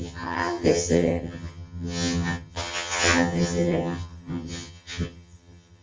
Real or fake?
fake